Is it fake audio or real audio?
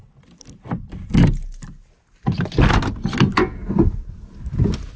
real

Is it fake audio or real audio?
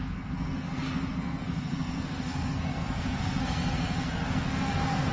fake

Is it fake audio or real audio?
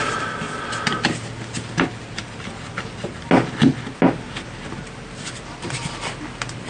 real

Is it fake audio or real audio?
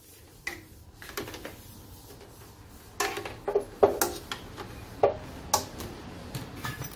real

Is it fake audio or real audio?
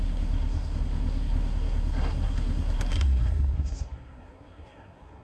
fake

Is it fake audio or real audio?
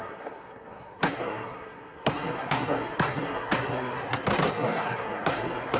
fake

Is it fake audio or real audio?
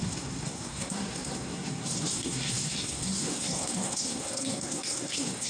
fake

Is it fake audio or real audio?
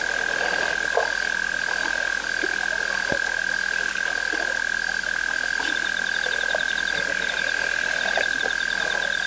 real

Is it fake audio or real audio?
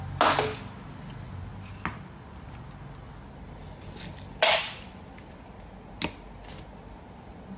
real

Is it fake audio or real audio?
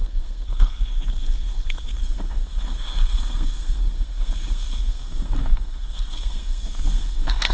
fake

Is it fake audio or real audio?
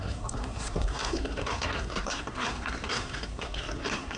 fake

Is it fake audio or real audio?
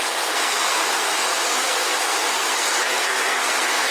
fake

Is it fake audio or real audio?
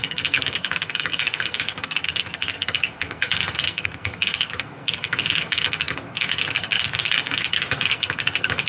fake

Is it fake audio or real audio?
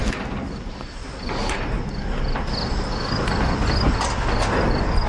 real